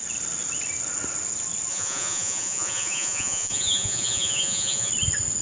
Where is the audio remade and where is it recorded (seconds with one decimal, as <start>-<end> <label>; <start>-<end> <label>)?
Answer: 0.0-1.7 recorded; 1.7-4.9 remade; 4.9-5.4 recorded